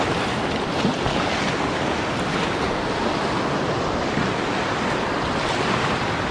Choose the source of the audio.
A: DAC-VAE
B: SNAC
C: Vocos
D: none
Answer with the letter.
D